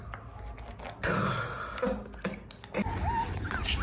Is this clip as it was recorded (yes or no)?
yes